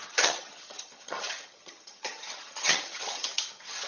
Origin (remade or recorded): remade